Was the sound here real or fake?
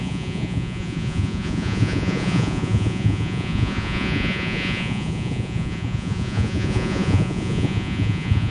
fake